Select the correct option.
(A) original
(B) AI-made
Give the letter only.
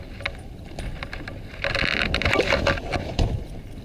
A